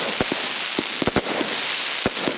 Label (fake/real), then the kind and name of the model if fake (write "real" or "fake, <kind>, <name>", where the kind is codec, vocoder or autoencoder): real